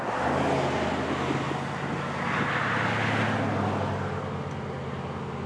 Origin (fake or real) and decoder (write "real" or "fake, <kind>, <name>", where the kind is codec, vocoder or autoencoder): real